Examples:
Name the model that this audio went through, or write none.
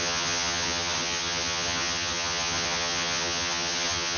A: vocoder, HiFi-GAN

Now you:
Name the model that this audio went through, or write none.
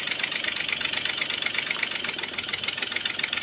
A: none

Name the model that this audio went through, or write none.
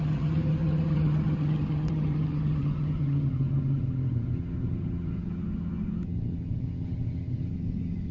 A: vocoder, HiFi-GAN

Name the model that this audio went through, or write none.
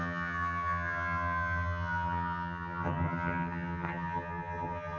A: vocoder, HiFi-GAN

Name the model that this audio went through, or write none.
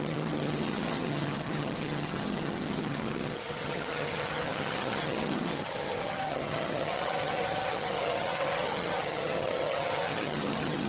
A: vocoder, HiFi-GAN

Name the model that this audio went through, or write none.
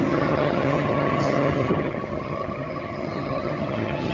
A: vocoder, HiFi-GAN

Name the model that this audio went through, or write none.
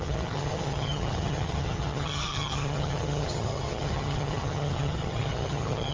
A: vocoder, HiFi-GAN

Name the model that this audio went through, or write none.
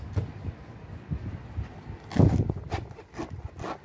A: none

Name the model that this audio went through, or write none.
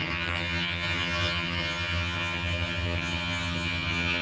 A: vocoder, HiFi-GAN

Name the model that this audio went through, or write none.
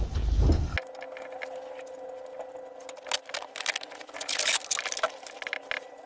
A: none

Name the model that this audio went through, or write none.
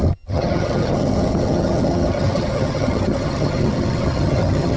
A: vocoder, HiFi-GAN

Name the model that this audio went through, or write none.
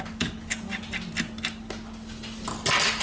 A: none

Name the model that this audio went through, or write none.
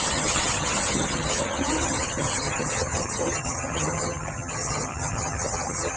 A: vocoder, HiFi-GAN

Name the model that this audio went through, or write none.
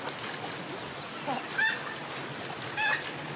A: none